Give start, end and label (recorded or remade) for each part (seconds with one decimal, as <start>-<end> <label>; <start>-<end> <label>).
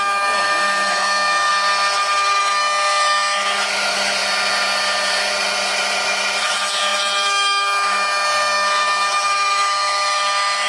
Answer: 0.0-1.5 remade; 1.5-2.4 recorded; 2.4-4.2 remade; 4.2-6.4 recorded; 6.4-10.7 remade